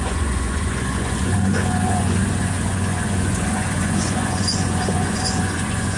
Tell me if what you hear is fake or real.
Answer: fake